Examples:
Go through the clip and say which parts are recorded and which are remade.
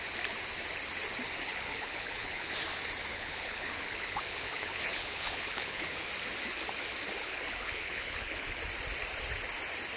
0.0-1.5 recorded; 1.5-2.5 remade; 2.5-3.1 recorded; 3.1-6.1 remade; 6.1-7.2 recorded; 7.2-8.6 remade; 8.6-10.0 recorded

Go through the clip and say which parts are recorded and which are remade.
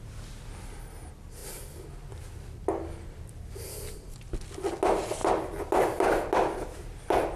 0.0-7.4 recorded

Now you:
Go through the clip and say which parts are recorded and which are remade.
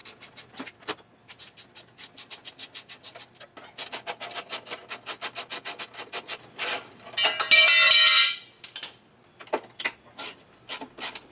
0.0-11.3 recorded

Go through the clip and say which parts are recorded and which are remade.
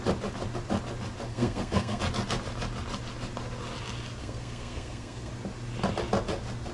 0.0-1.3 recorded; 1.3-2.0 remade; 2.0-4.2 recorded; 4.2-5.3 remade; 5.3-6.7 recorded